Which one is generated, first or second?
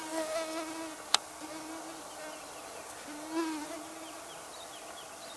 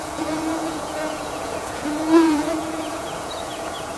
second